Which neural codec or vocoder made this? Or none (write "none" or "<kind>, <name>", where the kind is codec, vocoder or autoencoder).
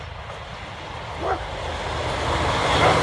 none